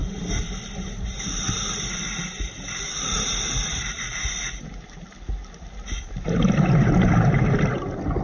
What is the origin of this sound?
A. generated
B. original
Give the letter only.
B